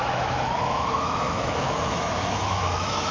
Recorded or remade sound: remade